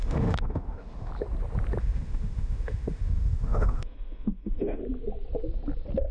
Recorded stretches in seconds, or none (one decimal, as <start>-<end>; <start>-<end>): 1.1-1.8; 4.8-6.1